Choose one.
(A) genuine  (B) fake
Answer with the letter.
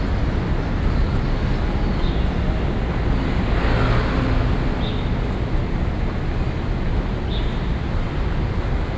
A